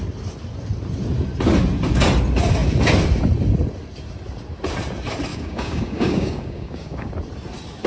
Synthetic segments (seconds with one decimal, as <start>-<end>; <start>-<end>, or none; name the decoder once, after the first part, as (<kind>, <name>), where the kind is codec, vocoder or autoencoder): 5.3-7.1 (codec, DAC)